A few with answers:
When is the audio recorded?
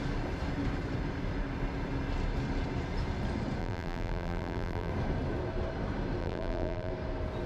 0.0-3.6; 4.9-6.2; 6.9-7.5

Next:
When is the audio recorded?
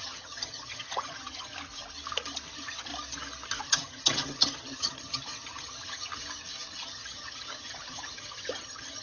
1.5-2.5; 2.9-3.6; 6.1-6.7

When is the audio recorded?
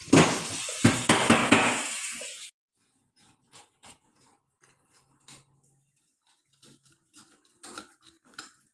0.0-1.4; 4.4-8.7